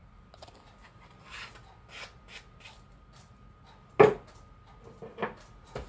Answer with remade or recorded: recorded